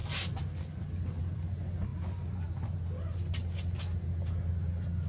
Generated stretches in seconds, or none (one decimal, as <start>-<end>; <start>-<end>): none